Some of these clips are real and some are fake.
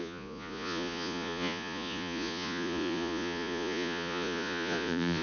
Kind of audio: fake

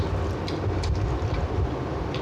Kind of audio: real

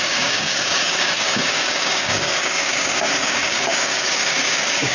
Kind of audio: fake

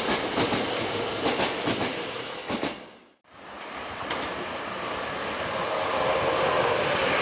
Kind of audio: real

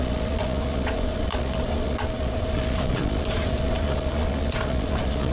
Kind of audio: fake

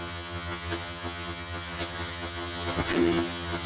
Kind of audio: fake